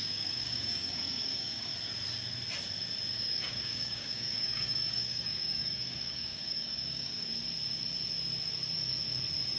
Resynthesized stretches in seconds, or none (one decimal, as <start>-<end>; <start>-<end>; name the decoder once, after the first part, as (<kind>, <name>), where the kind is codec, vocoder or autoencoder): 0.0-1.7 (codec, DAC); 3.1-7.3

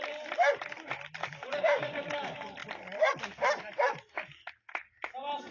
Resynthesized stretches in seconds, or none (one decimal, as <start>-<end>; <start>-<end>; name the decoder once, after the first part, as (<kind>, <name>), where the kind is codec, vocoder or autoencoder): 1.2-2.2 (codec, DAC)

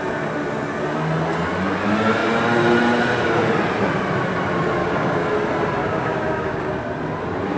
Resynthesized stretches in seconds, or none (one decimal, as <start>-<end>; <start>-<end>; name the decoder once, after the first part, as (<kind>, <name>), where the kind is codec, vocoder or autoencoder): 4.8-5.3 (codec, DAC); 5.8-6.8

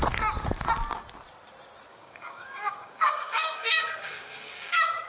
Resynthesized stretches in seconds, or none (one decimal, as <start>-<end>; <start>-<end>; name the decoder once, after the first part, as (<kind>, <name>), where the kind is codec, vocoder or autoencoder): 1.9-5.1 (codec, DAC)

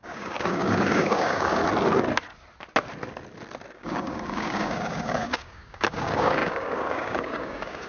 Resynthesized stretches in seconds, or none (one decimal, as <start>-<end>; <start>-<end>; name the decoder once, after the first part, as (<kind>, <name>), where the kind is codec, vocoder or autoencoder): 0.0-1.6 (codec, DAC); 3.7-7.9